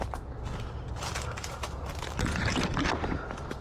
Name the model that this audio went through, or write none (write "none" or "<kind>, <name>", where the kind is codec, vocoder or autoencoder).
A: none